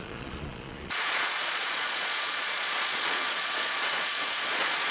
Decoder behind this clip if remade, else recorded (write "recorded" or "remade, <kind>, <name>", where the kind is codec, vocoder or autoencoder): remade, vocoder, Vocos